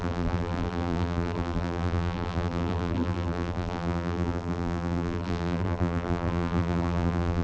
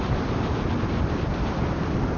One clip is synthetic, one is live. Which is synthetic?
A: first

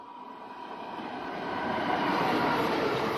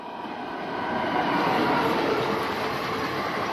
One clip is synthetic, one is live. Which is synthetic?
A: first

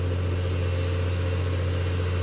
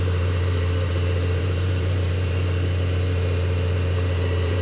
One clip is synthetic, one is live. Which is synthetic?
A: second